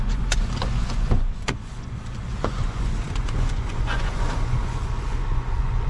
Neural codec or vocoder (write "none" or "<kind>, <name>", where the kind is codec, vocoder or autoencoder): vocoder, Vocos